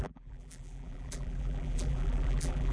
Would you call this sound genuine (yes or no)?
no